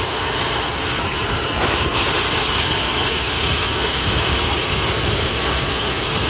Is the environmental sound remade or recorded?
recorded